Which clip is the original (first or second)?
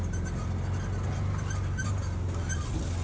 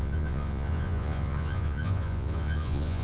first